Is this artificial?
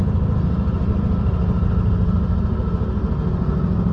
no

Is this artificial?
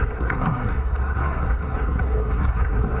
yes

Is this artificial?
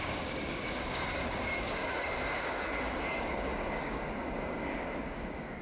yes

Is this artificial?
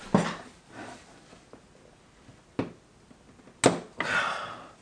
no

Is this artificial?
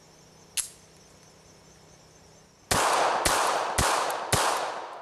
no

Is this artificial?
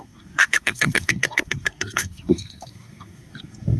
yes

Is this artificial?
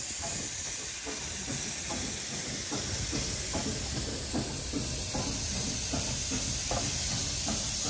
no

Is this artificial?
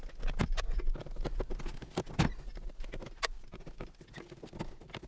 no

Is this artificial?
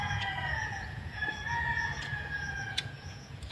yes